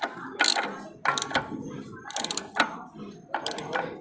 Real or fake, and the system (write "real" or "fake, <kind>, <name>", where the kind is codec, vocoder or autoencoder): real